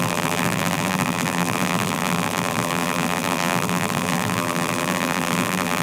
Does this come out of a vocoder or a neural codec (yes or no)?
yes